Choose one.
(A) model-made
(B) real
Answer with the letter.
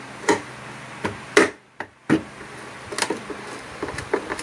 B